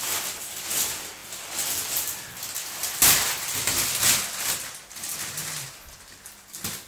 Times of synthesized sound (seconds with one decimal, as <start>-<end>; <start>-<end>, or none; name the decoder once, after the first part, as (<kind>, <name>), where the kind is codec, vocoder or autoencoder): none